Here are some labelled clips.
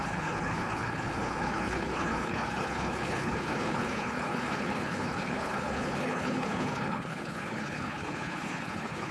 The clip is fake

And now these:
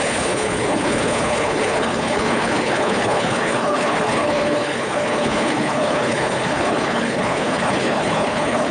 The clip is fake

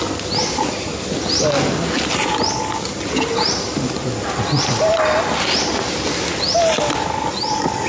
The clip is real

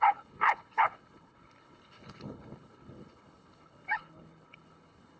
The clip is fake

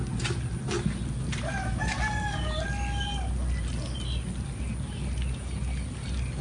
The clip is real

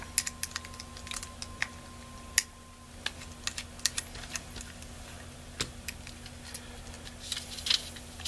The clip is real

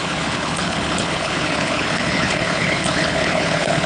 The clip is fake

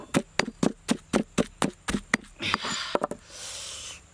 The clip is real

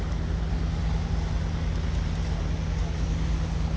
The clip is real